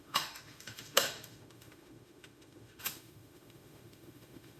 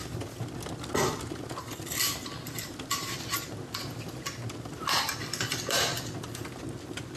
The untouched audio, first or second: second